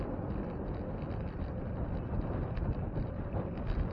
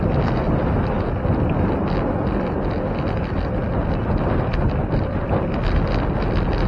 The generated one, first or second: first